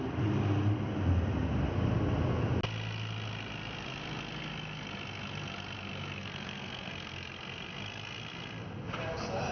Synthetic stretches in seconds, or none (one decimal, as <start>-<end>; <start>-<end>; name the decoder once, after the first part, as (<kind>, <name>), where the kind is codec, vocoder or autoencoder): 6.2-6.9 (codec, SNAC)